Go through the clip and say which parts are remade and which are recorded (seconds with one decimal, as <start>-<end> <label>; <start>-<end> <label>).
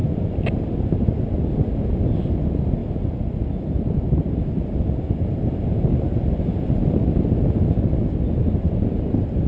0.0-9.5 recorded